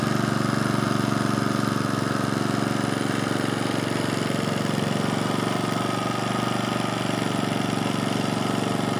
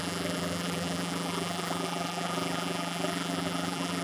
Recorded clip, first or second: first